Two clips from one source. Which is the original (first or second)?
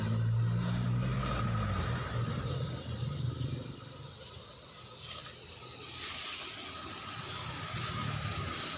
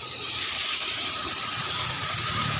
first